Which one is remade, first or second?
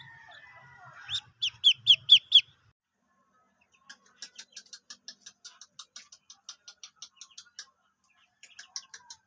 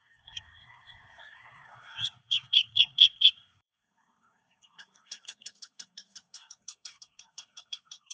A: second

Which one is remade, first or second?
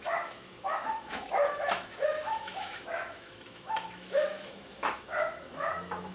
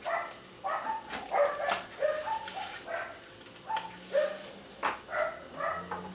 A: first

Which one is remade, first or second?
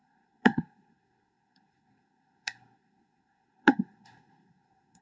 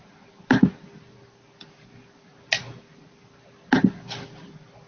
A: first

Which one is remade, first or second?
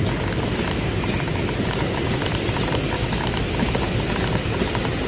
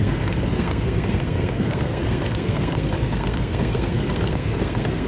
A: second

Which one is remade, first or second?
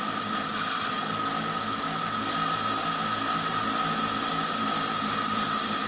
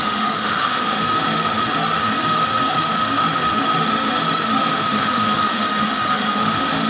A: second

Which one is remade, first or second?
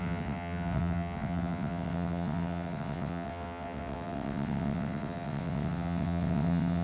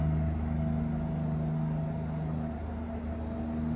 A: first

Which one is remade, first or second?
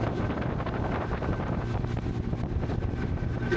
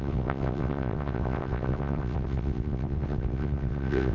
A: second